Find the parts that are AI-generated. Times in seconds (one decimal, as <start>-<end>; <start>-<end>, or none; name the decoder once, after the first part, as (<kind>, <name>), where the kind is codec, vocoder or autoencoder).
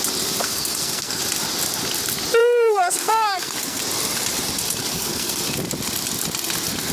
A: 0.4-1.2 (codec, SNAC); 2.4-3.8; 4.8-5.4